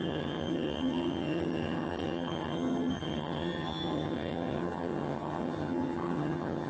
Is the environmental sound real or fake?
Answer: fake